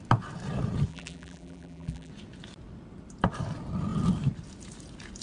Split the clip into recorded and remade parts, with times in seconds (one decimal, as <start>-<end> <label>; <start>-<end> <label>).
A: 0.0-0.9 recorded; 0.9-2.1 remade; 2.1-5.2 recorded